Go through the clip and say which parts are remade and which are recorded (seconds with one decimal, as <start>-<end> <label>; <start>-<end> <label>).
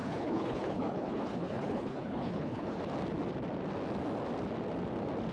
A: 0.0-2.8 remade; 2.8-5.3 recorded